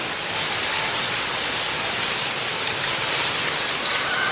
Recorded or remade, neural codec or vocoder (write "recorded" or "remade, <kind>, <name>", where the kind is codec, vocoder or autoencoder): recorded